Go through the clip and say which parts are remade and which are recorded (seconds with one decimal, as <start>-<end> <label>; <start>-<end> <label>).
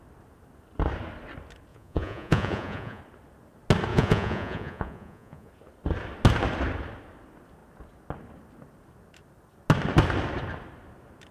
0.0-1.7 recorded; 1.7-3.0 remade; 3.0-3.9 recorded; 3.9-5.5 remade; 5.5-11.3 recorded